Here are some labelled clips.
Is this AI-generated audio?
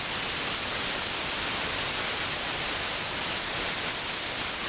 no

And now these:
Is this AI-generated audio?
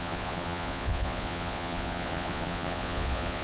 yes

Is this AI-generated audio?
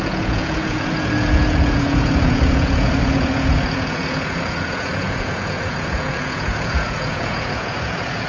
yes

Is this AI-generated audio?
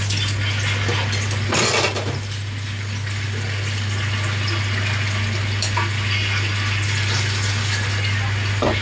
no